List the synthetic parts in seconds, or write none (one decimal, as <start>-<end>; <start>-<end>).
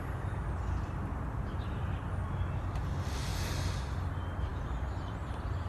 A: none